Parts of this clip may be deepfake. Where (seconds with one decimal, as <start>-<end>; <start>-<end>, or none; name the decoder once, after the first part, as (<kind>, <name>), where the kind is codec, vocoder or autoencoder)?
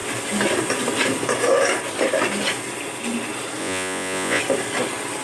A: 3.6-4.4 (vocoder, Vocos)